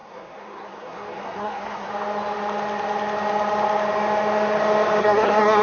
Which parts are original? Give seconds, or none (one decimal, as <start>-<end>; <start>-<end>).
1.9-5.0

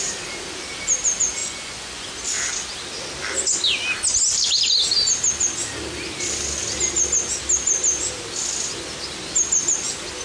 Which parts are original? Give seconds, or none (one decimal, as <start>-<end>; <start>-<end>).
0.0-1.4; 2.1-10.2

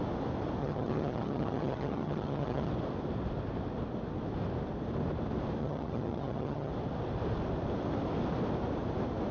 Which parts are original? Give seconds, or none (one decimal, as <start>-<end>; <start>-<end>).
0.0-0.6; 2.7-5.6; 6.7-9.3

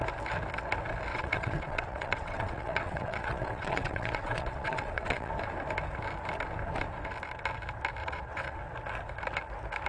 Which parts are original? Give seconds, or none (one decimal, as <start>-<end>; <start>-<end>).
0.0-1.1; 5.3-8.0; 8.6-9.9